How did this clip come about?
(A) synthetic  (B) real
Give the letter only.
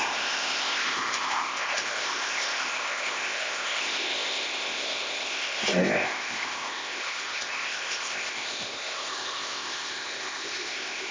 A